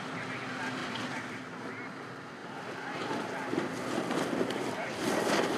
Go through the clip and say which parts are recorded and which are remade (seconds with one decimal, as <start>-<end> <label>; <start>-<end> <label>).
0.0-0.8 recorded; 0.8-1.4 remade; 1.4-2.4 recorded; 2.4-3.9 remade; 3.9-5.6 recorded